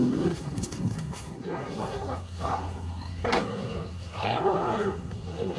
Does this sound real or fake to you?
fake